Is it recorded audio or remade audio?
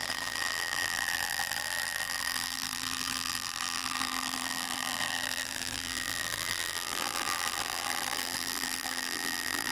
remade